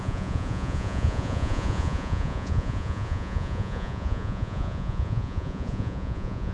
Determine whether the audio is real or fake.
fake